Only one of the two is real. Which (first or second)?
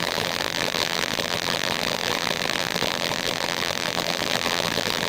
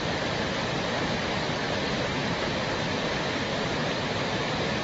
second